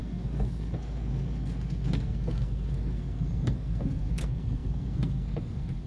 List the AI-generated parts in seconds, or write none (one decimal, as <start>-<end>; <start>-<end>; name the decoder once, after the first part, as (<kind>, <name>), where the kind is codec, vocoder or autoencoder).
0.0-5.9 (codec, SNAC)